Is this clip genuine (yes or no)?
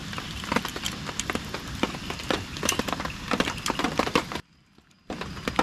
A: no